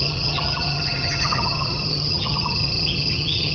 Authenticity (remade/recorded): remade